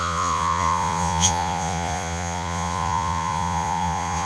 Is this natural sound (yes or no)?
no